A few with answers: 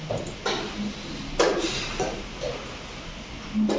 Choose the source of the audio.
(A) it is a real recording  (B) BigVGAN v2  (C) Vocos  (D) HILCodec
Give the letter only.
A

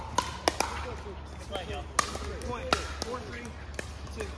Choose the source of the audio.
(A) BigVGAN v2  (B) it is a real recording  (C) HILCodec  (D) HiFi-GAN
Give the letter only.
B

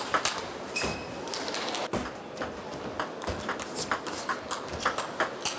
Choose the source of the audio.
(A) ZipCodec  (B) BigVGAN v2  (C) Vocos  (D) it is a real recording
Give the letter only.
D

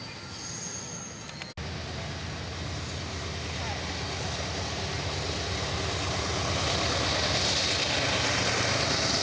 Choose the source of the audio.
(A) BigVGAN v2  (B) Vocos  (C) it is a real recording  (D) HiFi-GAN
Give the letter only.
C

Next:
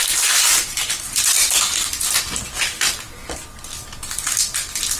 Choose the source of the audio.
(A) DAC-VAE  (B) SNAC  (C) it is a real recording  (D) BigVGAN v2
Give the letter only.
C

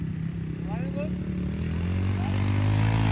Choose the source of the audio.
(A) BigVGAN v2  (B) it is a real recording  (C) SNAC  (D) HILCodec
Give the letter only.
B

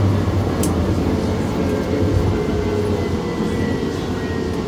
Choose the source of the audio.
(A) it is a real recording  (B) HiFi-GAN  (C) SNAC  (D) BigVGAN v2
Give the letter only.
A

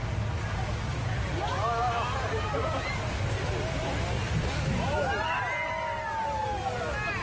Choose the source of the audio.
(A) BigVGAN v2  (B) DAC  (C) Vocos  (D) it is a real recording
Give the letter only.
D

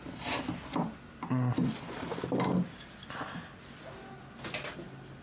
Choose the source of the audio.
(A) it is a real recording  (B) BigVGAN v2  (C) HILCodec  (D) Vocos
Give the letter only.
A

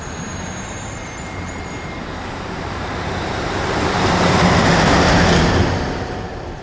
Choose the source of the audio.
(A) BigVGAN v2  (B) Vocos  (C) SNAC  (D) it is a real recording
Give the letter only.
A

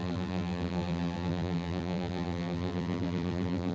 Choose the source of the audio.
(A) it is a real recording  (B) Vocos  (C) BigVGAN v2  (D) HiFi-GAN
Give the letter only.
C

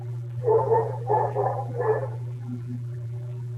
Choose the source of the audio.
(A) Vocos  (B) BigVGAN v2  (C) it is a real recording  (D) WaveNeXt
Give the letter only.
B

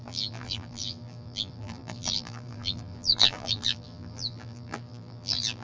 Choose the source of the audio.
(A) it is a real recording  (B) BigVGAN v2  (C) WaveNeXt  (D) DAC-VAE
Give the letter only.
B